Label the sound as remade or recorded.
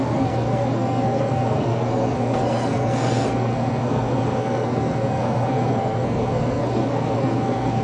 remade